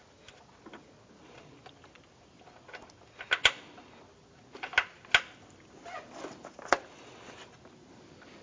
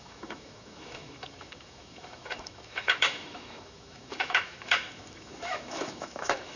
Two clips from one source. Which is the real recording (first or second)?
first